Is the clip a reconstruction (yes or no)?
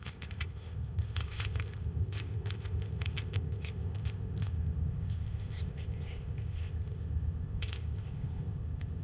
yes